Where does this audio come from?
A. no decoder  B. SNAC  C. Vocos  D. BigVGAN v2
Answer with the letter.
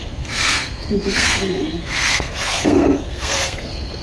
B